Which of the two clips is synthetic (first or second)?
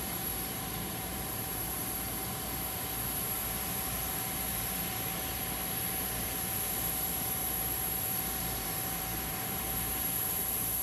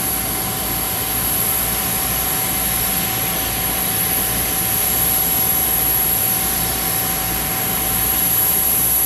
first